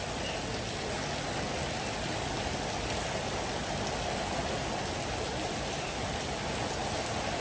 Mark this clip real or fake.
real